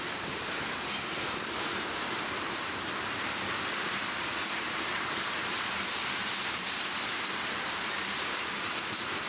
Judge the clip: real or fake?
fake